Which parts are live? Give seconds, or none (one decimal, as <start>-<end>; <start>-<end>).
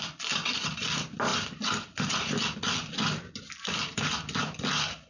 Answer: 0.0-5.1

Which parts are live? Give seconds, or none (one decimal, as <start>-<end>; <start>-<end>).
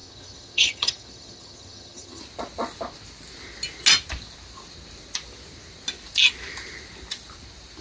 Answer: 2.2-7.8